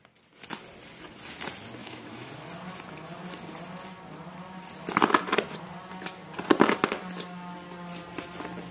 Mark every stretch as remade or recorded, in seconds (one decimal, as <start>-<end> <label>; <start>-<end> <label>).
0.0-1.8 recorded; 1.8-2.3 remade; 2.3-8.7 recorded